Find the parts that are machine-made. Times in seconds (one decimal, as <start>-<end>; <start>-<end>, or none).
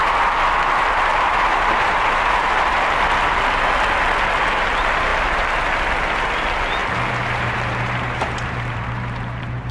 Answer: 1.1-3.0; 6.8-9.7